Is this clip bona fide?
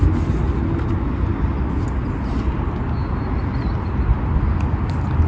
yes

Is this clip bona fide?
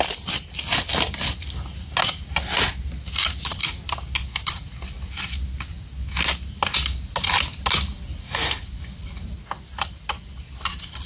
yes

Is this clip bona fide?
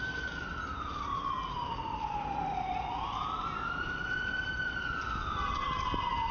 yes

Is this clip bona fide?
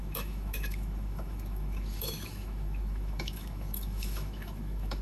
no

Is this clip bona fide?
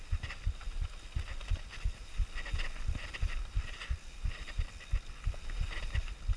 yes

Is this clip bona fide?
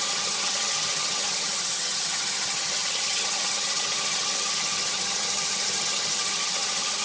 no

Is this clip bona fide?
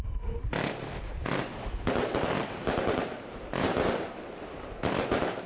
no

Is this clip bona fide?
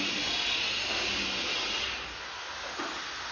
yes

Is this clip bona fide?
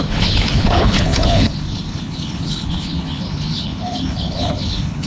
no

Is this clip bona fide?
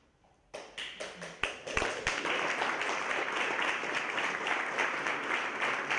yes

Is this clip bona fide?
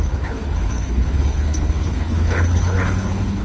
no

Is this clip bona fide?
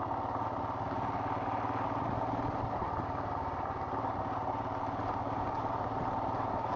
yes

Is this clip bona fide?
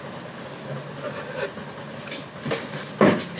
yes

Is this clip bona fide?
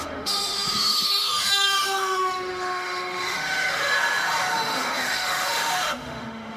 no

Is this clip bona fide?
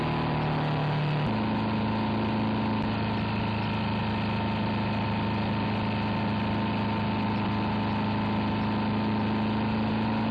yes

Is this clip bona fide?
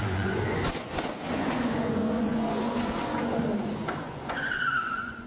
no